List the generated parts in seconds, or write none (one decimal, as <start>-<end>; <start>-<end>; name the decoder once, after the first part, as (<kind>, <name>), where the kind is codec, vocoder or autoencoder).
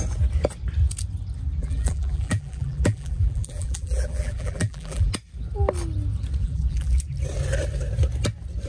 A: 1.6-5.1 (vocoder, BigVGAN v2); 6.4-7.0